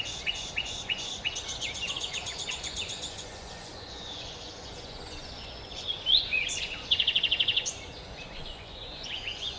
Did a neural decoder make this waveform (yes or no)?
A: yes